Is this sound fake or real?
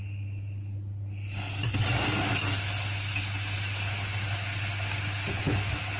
real